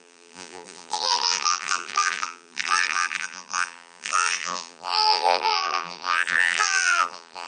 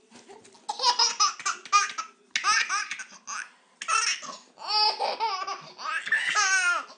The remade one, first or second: first